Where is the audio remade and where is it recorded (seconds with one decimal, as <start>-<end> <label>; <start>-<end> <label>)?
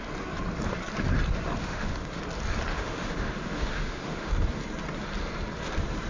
0.0-1.6 recorded; 1.6-2.2 remade; 2.2-2.7 recorded; 2.7-4.3 remade; 4.3-6.1 recorded